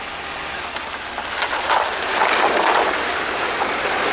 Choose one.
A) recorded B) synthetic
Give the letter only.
A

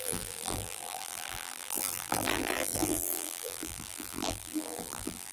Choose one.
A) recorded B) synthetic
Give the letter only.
B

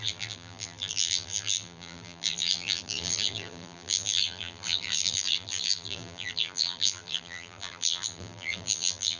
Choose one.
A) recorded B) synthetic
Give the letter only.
B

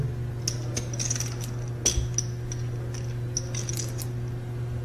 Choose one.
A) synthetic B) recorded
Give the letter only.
B